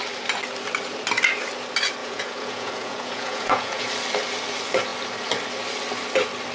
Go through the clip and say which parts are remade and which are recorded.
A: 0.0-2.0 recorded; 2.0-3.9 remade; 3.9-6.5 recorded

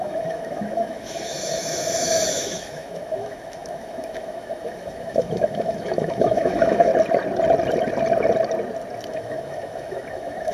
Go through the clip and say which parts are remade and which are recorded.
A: 0.0-6.9 remade; 6.9-9.1 recorded; 9.1-10.5 remade